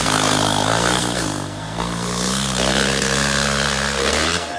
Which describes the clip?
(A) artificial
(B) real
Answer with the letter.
A